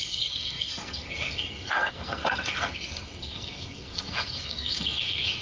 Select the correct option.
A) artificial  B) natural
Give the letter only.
A